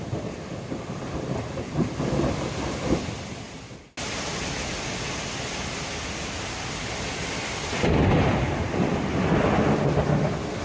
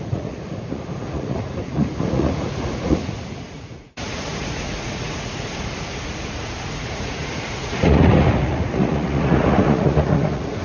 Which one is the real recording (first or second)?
first